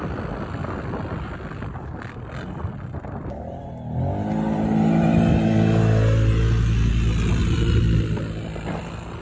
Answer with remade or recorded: recorded